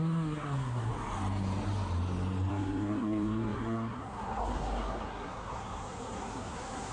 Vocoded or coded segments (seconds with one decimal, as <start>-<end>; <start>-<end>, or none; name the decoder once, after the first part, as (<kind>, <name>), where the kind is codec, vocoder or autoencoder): 0.0-0.9 (codec, SNAC); 2.5-6.9

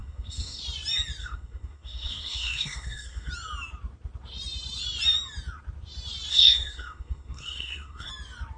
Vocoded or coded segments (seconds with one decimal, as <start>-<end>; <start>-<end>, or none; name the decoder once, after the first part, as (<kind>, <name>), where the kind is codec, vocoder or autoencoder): 0.0-0.6 (codec, SNAC); 1.2-3.3; 6.3-8.1

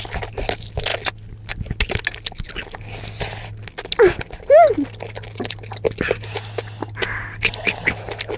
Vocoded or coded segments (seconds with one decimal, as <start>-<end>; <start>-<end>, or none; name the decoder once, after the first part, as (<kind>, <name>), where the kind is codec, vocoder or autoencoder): none

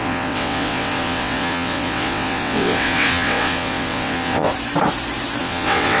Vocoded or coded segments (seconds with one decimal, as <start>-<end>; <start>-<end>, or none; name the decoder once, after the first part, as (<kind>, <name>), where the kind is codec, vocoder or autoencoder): 0.0-4.5 (vocoder, WaveNeXt); 5.4-6.0

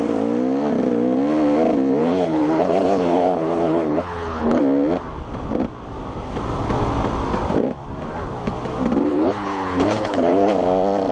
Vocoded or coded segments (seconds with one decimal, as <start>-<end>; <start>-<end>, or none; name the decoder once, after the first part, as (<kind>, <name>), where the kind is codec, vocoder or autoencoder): 2.0-4.6 (codec, HILCodec); 9.1-10.5